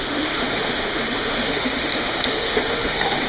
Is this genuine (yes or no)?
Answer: no